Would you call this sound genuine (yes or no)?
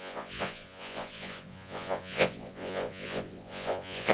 no